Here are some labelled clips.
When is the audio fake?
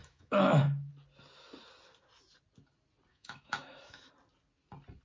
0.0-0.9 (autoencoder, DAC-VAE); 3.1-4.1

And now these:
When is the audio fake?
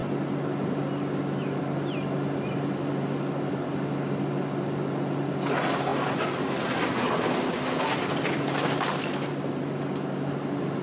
none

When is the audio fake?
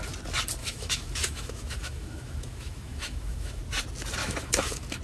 0.6-3.6 (autoencoder, DAC-VAE); 4.2-5.0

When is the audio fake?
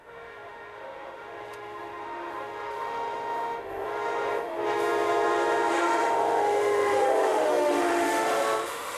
0.0-9.0 (autoencoder, DAC-VAE)